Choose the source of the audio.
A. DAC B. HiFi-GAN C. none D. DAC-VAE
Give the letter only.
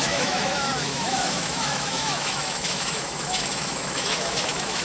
D